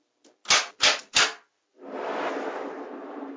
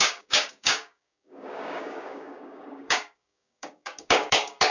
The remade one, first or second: second